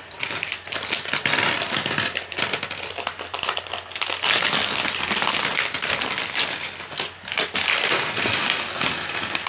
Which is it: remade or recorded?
recorded